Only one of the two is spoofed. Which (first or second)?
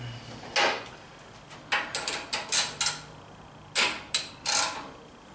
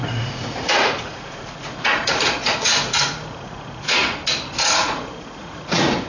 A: second